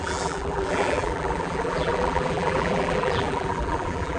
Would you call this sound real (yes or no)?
no